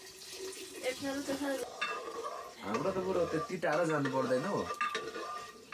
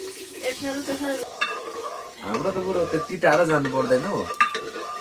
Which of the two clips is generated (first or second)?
second